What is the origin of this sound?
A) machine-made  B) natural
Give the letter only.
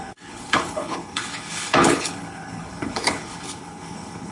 A